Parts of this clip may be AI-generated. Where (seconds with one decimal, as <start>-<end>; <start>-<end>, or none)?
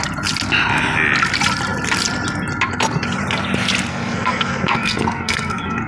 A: 3.9-5.9